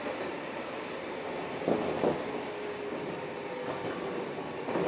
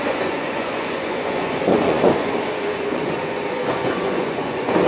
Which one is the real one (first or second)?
first